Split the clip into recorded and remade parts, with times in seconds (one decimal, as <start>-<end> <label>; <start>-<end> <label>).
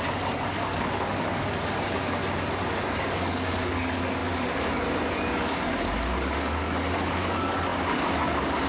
0.0-2.2 remade; 2.2-2.9 recorded; 2.9-8.7 remade